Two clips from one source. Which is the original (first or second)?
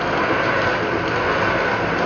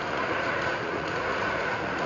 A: first